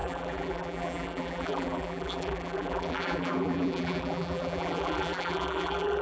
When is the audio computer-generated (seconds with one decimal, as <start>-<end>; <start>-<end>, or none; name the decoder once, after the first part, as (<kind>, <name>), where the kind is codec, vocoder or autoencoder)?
0.0-6.0 (vocoder, BigVGAN v2)